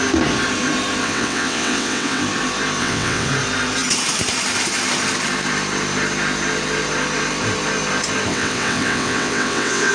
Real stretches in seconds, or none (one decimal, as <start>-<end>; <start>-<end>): 0.0-1.0; 2.2-2.8; 3.3-8.3